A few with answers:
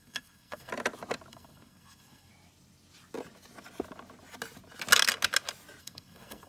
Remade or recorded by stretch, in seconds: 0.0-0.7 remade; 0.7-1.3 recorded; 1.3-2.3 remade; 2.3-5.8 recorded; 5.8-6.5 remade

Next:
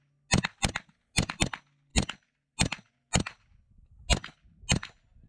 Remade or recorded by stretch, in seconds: 0.0-5.3 recorded